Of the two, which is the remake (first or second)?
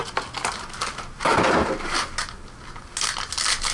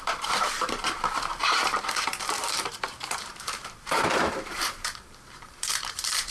second